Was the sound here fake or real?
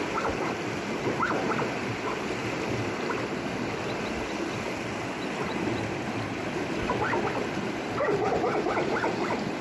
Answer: real